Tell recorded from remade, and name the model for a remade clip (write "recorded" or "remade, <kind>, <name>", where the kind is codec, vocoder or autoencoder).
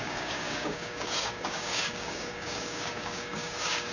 remade, codec, DAC